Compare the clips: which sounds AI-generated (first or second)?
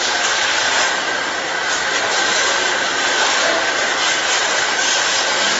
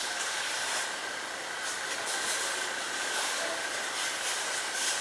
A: second